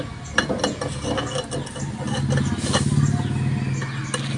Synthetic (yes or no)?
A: no